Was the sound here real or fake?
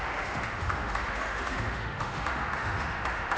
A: fake